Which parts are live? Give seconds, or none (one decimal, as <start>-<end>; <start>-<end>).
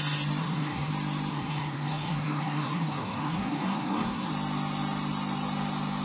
0.0-0.4; 0.9-1.3; 4.3-6.0